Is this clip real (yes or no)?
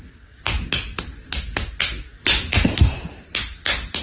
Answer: yes